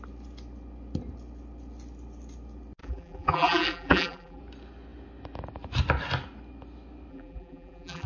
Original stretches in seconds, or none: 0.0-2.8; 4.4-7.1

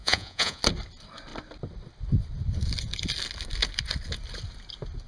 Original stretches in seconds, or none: 0.6-5.1

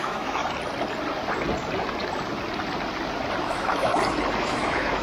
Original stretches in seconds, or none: 0.4-3.4; 3.9-4.4

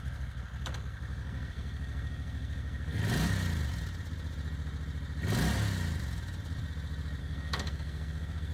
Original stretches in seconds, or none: 3.0-7.2